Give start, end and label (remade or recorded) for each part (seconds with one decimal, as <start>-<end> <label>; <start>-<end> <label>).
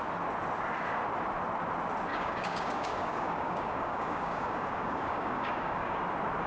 0.0-2.1 recorded; 2.1-6.0 remade; 6.0-6.5 recorded